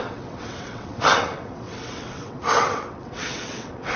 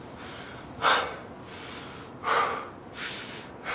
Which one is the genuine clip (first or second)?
second